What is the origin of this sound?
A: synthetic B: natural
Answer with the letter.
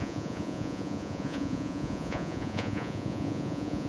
A